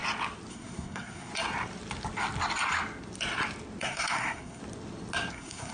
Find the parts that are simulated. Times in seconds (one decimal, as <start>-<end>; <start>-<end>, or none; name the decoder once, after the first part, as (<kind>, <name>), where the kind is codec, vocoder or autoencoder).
0.5-1.3 (codec, SNAC); 3.8-4.6; 5.3-5.7